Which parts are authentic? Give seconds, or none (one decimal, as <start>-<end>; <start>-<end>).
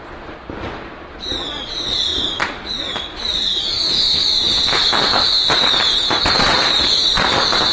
0.0-2.1; 3.6-7.7